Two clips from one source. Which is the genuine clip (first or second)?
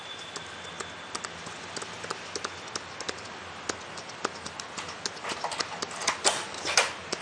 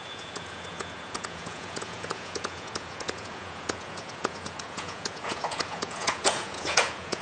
first